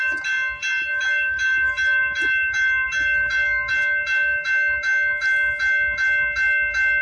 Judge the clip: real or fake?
real